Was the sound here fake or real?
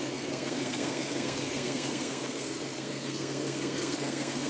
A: fake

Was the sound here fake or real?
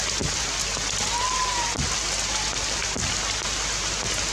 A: real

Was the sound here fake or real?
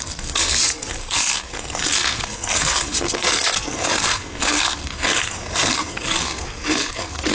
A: fake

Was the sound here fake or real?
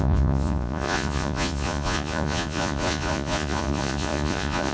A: fake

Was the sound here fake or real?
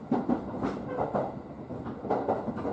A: real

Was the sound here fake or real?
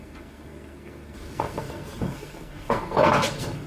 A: fake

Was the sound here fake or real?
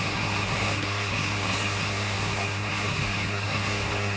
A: fake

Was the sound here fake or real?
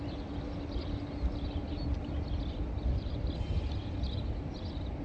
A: real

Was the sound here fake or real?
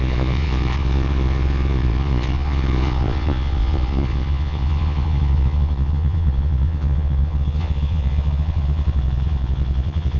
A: fake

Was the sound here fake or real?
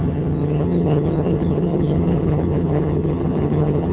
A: fake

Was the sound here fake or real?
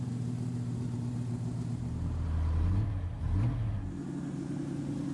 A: real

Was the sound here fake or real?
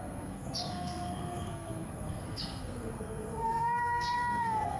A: fake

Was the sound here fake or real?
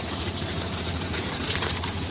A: fake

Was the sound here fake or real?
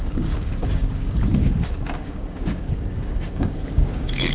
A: fake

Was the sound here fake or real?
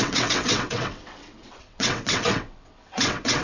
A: fake